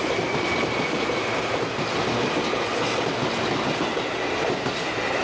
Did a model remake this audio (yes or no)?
no